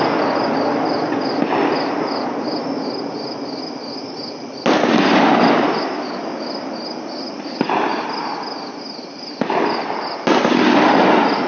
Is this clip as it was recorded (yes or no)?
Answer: yes